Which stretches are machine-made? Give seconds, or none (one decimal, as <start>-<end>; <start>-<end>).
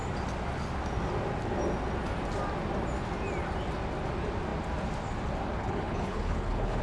5.6-6.8